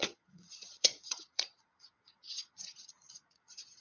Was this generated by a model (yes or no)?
yes